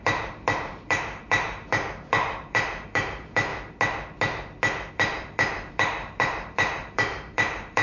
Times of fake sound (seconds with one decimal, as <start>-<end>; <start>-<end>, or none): 0.0-3.5; 4.9-7.8